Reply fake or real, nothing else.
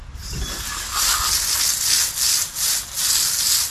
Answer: real